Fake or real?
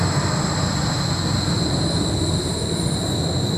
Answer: real